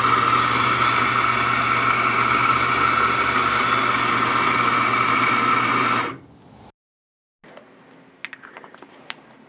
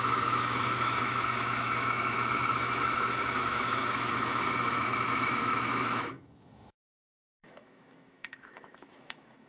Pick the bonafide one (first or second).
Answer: first